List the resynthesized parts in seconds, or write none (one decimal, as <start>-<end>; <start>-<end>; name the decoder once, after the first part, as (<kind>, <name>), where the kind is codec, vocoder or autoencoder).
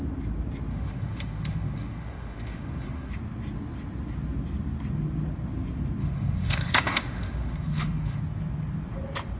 0.7-3.1 (autoencoder, DAC-VAE); 6.0-8.2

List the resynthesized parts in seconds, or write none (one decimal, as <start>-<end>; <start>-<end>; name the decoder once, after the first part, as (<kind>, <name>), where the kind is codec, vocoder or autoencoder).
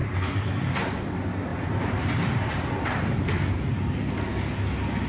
0.0-0.7 (vocoder, BigVGAN v2); 1.5-2.4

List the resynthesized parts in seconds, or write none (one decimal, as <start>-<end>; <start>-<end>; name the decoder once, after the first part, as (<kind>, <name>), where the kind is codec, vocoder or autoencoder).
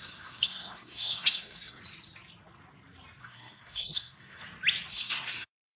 0.0-1.8 (codec, SNAC); 3.2-4.4; 4.9-5.8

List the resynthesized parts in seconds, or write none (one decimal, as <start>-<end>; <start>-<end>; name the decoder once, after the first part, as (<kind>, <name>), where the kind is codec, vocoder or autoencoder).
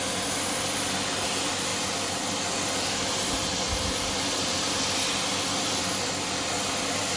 none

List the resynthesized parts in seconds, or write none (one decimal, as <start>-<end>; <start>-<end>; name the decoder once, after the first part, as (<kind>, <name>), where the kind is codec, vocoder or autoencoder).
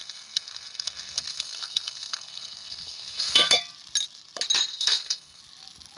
0.0-3.6 (codec, SNAC); 4.7-5.4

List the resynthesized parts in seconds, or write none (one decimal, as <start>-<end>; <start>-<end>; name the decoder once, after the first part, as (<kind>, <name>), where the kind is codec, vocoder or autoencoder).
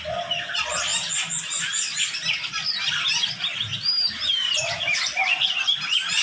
3.7-5.4 (vocoder, BigVGAN v2)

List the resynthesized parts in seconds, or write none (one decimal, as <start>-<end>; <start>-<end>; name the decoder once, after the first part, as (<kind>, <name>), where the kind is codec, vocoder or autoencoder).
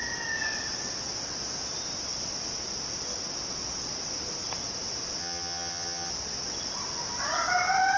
5.2-6.1 (vocoder, HiFi-GAN)